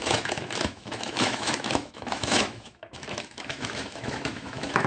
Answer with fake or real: fake